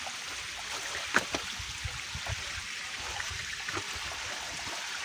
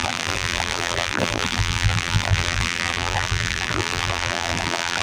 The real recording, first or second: first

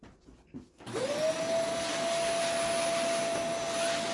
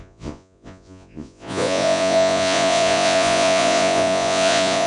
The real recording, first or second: first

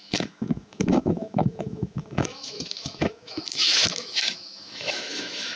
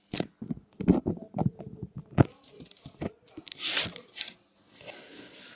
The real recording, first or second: second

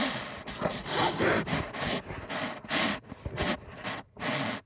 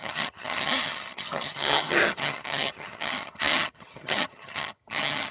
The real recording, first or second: first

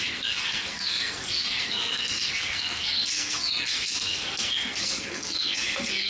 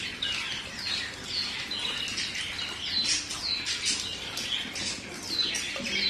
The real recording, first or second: second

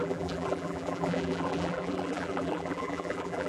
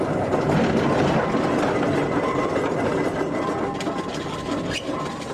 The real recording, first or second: second